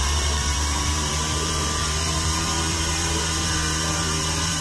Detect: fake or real fake